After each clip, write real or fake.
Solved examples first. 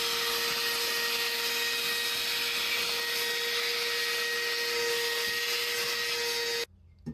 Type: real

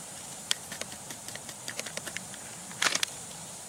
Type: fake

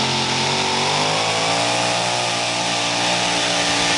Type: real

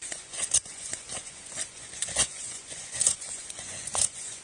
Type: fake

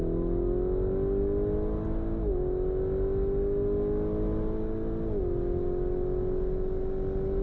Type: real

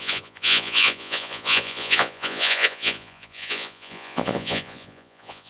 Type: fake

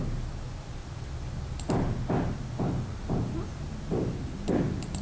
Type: real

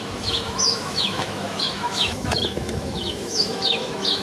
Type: fake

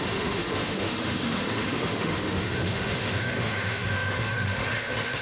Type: fake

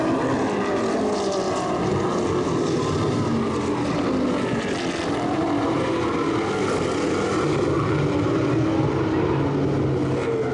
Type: real